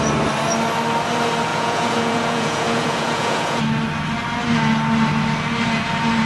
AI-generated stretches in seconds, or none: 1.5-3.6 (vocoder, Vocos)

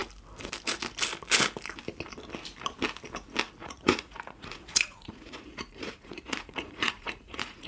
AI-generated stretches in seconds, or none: 3.6-7.7 (vocoder, Vocos)

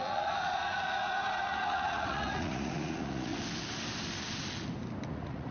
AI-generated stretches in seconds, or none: 0.0-3.3 (vocoder, Vocos); 5.1-5.5

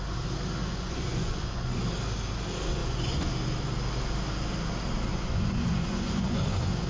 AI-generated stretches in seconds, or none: 0.6-1.8 (vocoder, Vocos); 2.8-3.3; 5.1-6.9